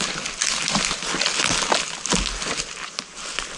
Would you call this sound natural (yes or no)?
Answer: yes